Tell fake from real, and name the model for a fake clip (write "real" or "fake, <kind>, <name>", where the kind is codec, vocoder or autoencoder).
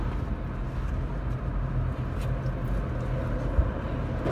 real